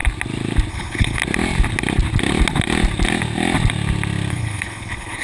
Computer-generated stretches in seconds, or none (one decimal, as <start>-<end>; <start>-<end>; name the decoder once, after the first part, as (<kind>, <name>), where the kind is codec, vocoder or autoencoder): 0.7-1.2 (codec, HILCodec); 4.3-5.2